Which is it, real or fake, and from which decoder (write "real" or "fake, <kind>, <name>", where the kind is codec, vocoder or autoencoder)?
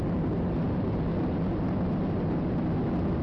real